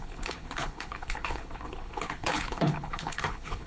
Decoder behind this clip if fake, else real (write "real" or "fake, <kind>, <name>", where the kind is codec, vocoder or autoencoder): fake, codec, HILCodec